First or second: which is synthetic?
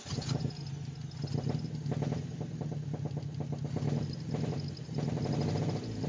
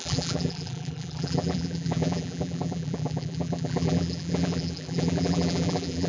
second